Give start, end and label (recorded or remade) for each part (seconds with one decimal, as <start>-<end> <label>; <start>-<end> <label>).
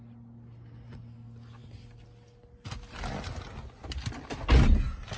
0.0-5.2 recorded